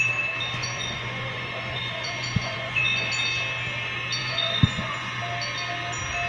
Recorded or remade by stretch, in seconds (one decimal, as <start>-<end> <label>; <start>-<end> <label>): 0.0-0.6 recorded; 0.6-3.1 remade; 3.1-4.2 recorded; 4.2-5.2 remade; 5.2-6.3 recorded